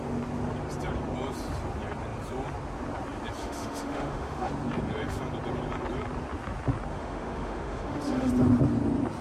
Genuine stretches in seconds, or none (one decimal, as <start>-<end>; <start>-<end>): 0.0-3.4; 4.5-6.9; 8.3-9.2